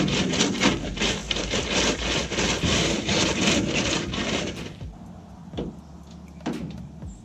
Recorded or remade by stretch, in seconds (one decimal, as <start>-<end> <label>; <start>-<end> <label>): 0.0-7.2 recorded